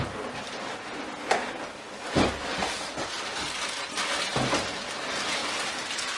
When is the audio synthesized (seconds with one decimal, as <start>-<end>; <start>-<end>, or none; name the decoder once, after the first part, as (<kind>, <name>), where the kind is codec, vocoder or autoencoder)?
none